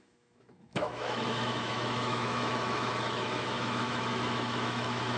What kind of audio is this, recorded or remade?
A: remade